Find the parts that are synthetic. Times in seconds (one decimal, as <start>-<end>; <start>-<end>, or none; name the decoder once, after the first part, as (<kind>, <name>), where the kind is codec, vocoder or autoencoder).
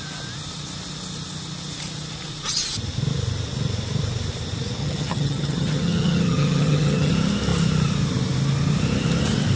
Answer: 4.8-7.1 (vocoder, HiFi-GAN)